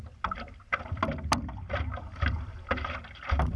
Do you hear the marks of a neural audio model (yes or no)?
no